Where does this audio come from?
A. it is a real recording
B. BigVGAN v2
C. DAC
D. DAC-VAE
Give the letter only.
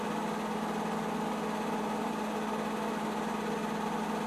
A